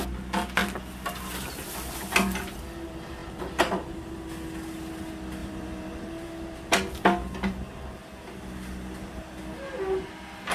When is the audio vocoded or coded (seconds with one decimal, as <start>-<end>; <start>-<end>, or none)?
5.4-6.3